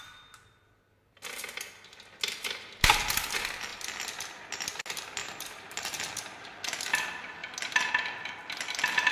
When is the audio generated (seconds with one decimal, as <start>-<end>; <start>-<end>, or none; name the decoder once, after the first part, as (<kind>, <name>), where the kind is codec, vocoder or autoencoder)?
5.2-6.2 (vocoder, BigVGAN v2)